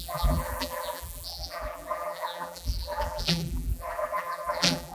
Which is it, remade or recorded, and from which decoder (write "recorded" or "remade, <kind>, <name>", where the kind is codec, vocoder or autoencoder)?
remade, vocoder, BigVGAN v2